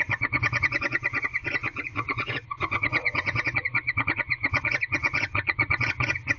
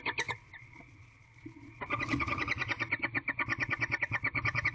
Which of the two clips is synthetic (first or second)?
first